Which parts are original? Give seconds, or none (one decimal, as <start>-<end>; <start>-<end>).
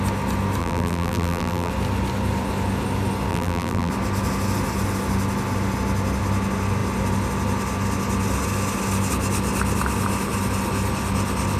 0.0-0.6; 1.7-3.3; 3.9-11.6